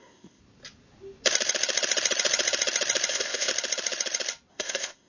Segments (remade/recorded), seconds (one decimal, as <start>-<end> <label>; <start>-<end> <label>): 0.0-0.4 remade; 0.4-3.1 recorded; 3.1-3.5 remade; 3.5-4.5 recorded; 4.5-5.1 remade